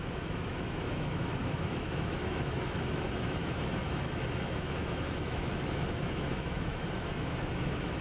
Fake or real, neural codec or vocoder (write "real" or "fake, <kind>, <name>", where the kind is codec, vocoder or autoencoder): fake, autoencoder, DAC-VAE